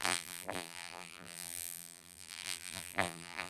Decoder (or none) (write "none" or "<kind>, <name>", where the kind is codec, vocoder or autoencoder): vocoder, BigVGAN v2